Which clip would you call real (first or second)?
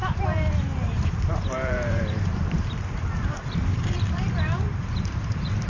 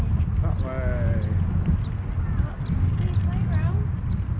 second